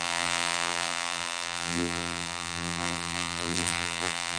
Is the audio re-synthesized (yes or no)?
yes